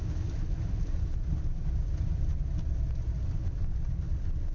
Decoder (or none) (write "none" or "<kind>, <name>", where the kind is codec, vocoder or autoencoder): none